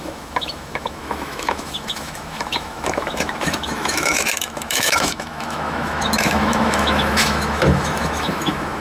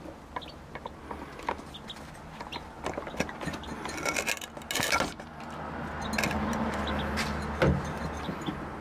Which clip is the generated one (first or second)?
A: first